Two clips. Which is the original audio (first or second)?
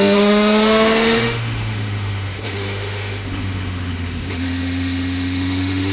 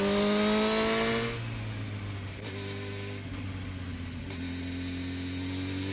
second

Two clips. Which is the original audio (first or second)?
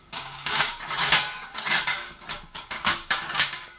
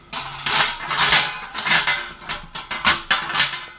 second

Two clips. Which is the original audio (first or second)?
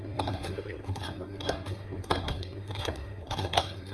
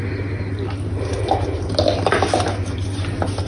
second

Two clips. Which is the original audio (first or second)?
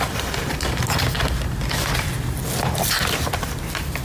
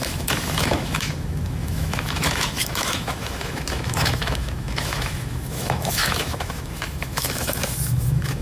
first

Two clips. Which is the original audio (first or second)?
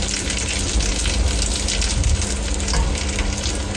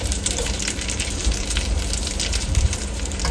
first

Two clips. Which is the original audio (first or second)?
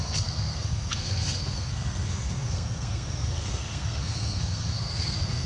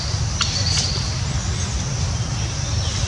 second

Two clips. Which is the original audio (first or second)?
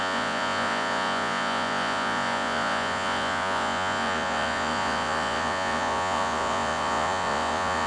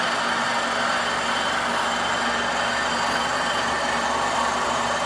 second